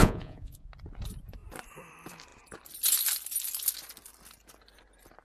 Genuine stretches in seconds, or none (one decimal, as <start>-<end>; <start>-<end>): 0.7-5.2